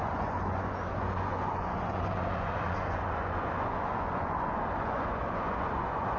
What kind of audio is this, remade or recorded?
remade